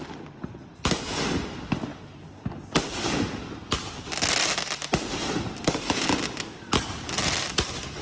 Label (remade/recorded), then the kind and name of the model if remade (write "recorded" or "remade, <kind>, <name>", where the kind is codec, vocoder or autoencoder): recorded